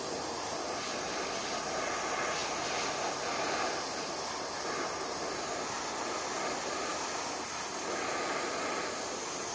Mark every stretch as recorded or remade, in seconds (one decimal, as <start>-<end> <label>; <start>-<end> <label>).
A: 0.0-9.5 recorded